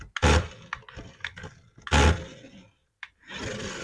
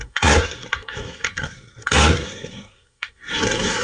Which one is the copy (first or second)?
second